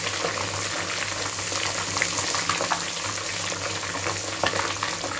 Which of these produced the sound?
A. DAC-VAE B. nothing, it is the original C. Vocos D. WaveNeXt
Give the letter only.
B